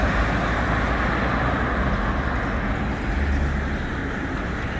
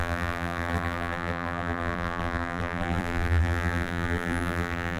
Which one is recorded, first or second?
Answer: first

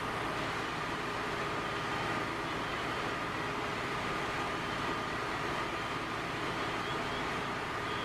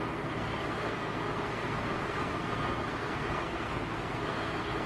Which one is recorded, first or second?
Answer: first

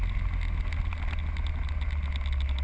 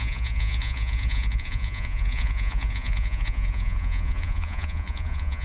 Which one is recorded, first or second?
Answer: first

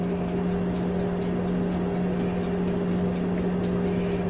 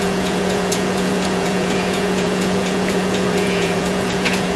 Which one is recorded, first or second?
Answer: first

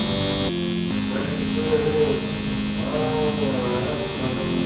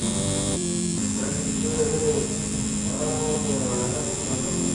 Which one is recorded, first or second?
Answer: first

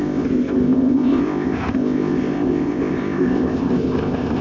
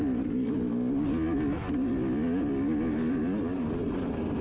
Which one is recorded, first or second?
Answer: second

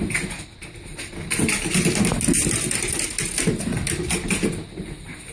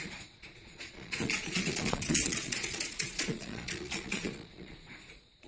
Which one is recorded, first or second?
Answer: first